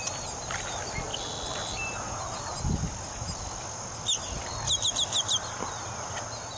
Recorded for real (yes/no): yes